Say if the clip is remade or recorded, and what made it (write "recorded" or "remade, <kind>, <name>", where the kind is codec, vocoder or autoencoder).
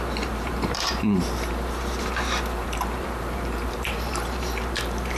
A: remade, vocoder, BigVGAN v2